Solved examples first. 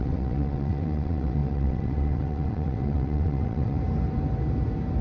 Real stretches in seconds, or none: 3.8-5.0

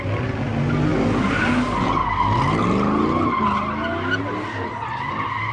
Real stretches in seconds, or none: 0.0-5.5

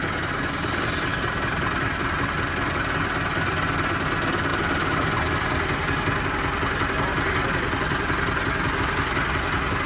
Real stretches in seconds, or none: 0.0-9.9

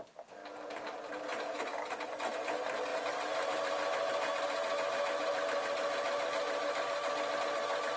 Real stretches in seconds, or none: 0.0-8.0